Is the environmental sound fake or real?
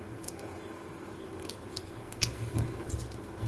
fake